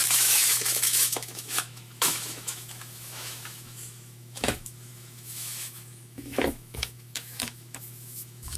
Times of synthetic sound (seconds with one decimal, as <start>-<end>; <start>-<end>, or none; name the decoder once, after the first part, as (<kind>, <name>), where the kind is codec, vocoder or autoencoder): 0.0-8.6 (autoencoder, DAC-VAE)